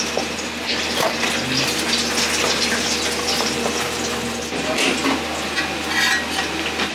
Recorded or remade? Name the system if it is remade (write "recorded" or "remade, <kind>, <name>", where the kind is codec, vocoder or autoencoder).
recorded